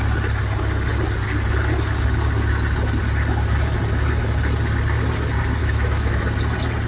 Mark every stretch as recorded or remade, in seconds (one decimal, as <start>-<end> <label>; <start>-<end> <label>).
0.0-5.6 recorded; 5.6-6.2 remade; 6.2-6.9 recorded